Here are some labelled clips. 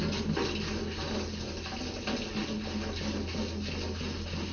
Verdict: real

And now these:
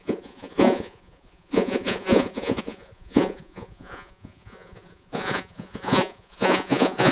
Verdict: fake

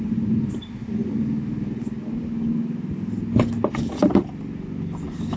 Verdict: real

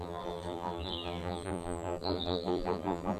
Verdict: fake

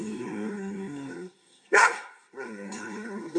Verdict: fake